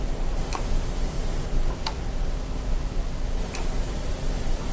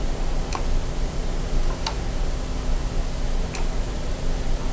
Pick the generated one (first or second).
first